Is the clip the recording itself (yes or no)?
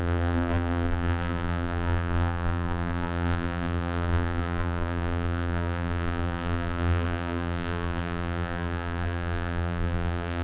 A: no